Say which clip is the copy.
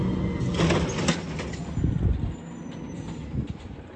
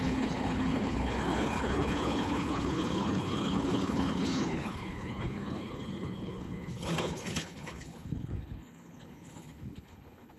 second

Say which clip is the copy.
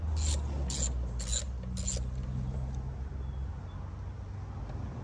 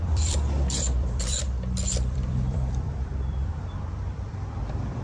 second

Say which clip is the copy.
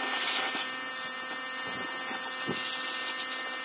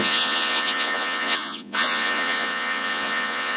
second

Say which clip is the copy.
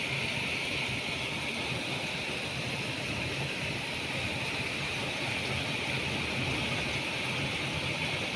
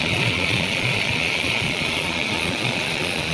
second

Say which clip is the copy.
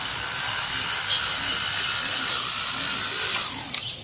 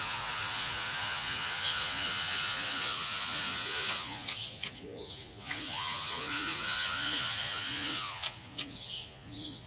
second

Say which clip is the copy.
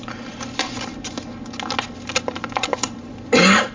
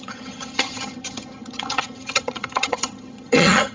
second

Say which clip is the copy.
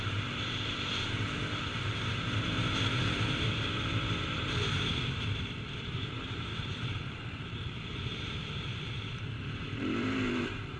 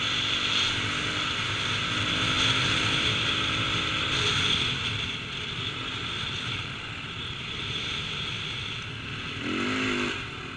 first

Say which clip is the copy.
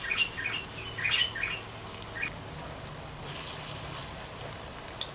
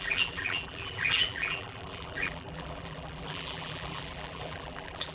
second